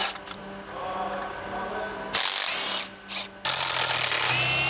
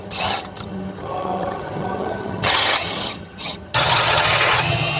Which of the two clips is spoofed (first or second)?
second